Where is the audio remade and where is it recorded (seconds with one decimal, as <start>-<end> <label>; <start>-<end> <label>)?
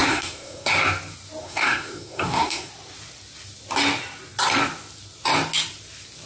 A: 0.0-0.7 remade; 0.7-1.4 recorded; 1.4-2.7 remade; 2.7-6.3 recorded